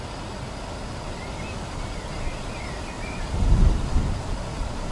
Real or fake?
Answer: real